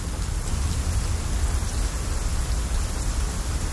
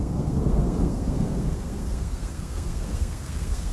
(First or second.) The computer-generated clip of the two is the second